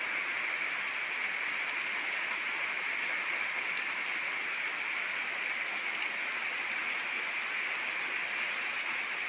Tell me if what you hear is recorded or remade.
recorded